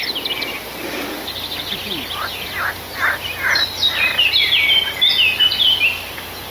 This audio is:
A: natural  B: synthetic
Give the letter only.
A